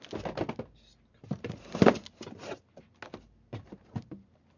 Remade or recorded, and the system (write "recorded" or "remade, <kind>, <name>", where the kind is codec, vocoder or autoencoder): recorded